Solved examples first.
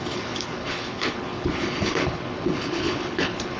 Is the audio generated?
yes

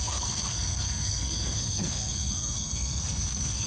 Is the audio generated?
yes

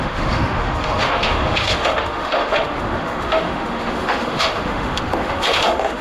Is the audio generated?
yes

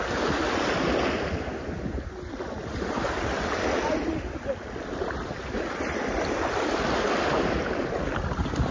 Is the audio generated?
no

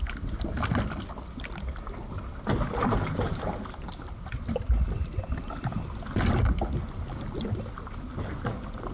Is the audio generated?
no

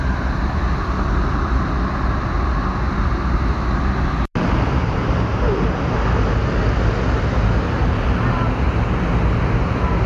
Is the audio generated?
no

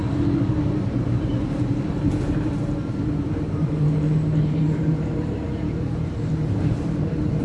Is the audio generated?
yes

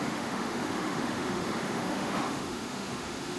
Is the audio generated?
yes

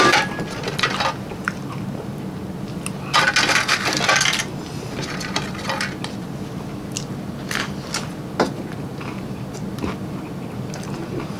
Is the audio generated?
no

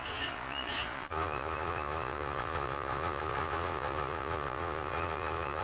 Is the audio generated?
yes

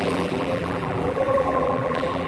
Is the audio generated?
yes